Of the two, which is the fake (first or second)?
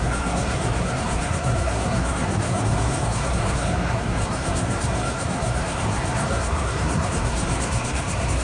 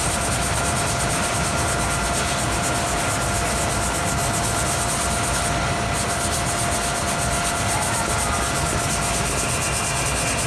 first